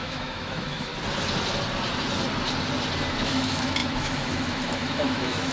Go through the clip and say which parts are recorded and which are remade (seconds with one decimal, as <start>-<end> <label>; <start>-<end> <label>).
0.0-0.9 remade; 0.9-3.1 recorded; 3.1-5.5 remade